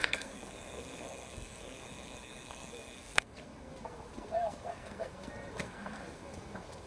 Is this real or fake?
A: fake